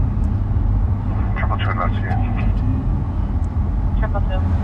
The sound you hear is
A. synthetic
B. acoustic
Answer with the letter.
B